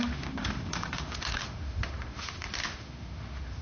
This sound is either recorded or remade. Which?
remade